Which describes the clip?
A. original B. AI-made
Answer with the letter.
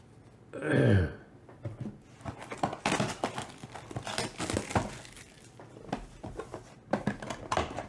A